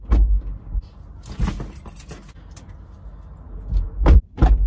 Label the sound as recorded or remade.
recorded